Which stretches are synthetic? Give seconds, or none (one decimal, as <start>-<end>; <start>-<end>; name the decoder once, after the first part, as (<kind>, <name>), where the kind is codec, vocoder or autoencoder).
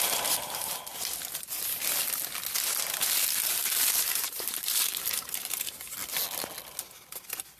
3.6-5.8 (vocoder, BigVGAN v2)